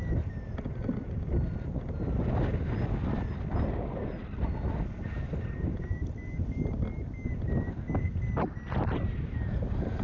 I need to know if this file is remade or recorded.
recorded